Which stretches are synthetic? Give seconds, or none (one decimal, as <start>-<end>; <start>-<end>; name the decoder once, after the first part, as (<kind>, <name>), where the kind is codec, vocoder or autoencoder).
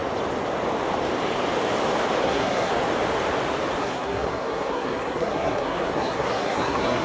2.2-2.7 (codec, SNAC); 3.8-7.0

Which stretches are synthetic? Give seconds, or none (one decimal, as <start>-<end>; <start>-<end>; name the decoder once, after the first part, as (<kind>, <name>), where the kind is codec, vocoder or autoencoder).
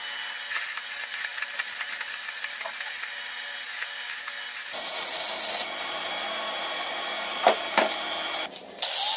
none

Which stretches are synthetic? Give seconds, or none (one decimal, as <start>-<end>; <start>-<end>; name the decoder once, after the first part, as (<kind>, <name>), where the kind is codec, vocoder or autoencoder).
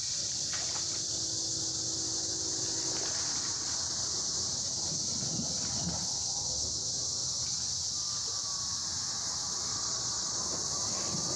9.7-10.4 (vocoder, Vocos)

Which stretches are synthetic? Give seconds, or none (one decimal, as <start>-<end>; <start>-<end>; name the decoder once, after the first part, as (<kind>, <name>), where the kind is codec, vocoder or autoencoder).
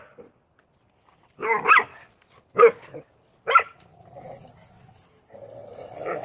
5.6-6.2 (vocoder, BigVGAN v2)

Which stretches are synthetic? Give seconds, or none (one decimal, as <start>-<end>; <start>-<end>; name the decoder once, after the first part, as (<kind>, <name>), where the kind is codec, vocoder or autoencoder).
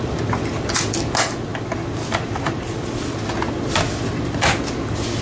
none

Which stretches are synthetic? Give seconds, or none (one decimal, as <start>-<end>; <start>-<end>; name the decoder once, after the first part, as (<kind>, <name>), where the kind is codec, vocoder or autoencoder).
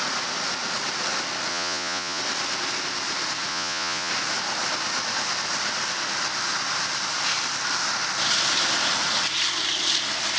1.5-2.2 (vocoder, Vocos); 3.5-4.1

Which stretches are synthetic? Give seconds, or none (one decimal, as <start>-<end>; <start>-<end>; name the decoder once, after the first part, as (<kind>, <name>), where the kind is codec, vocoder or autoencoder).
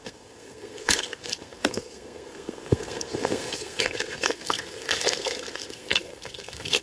0.0-6.8 (codec, SNAC)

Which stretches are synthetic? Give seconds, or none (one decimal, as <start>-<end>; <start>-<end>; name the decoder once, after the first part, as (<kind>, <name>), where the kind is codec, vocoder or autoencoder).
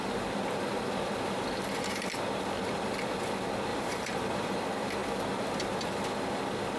3.7-4.5 (vocoder, BigVGAN v2)